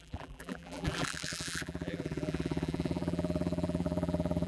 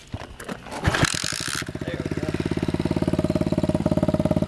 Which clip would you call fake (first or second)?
first